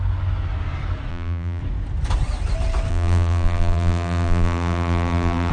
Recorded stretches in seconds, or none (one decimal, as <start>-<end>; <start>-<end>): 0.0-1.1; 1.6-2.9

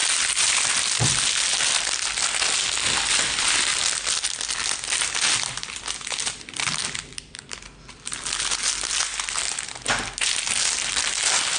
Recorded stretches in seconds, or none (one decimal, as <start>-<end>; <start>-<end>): 1.2-11.6

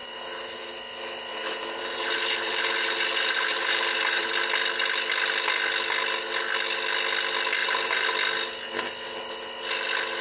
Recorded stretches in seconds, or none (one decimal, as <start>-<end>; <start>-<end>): 0.7-1.3; 4.3-7.6; 8.1-10.2

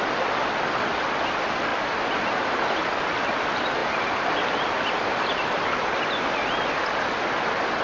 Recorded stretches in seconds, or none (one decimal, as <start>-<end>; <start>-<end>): 0.0-7.8

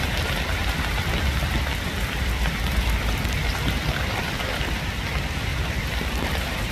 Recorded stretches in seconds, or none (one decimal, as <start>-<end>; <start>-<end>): 0.0-0.6; 4.6-5.5

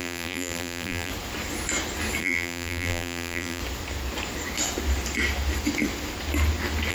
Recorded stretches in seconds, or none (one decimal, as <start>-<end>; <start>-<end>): 1.1-2.2; 3.6-6.9